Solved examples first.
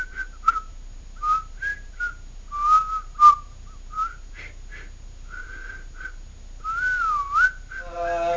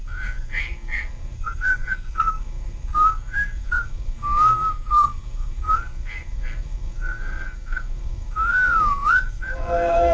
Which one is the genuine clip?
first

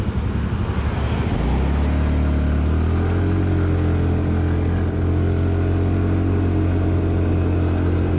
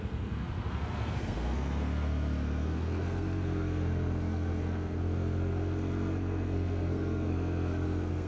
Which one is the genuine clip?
first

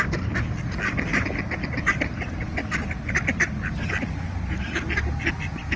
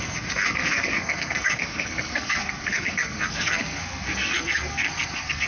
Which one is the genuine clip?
first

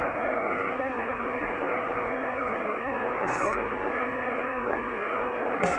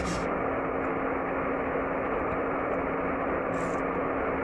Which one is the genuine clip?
second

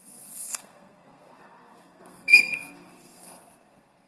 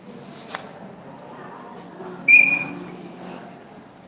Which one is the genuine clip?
second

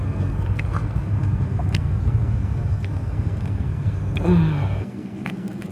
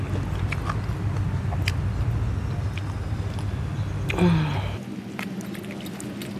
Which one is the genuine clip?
second